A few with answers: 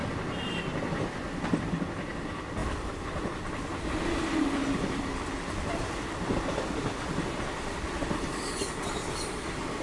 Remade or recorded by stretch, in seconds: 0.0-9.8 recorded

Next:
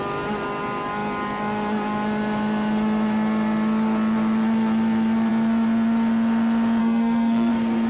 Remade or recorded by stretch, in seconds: 0.0-6.8 recorded; 6.8-7.5 remade; 7.5-7.9 recorded

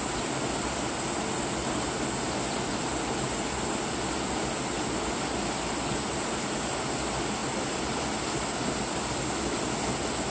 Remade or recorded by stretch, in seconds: 0.0-10.3 recorded

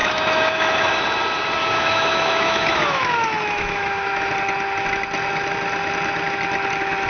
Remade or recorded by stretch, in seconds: 0.0-0.9 remade; 0.9-1.6 recorded; 1.6-4.3 remade; 4.3-7.1 recorded

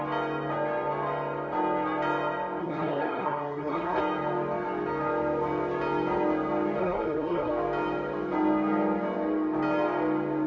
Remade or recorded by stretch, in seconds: 0.0-2.6 recorded; 2.6-4.0 remade; 4.0-6.8 recorded; 6.8-7.5 remade; 7.5-10.5 recorded

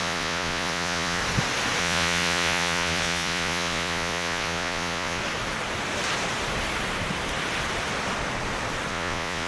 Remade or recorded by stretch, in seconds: 0.0-1.2 remade; 1.2-1.8 recorded; 1.8-5.2 remade; 5.2-8.9 recorded; 8.9-9.5 remade

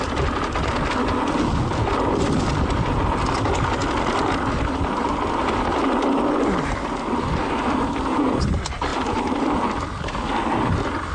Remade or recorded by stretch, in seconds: 0.0-5.8 recorded; 5.8-6.3 remade; 6.3-11.1 recorded

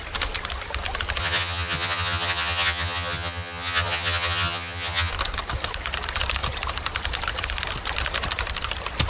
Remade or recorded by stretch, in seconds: 0.0-1.2 recorded; 1.2-5.1 remade; 5.1-9.1 recorded